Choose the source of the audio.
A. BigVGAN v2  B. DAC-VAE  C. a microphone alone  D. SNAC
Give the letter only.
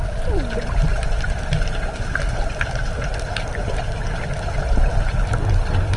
A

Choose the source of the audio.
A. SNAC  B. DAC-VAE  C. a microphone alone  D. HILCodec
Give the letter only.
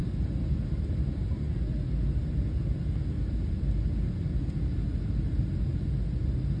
C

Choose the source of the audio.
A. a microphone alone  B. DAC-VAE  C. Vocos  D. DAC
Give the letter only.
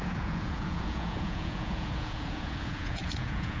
C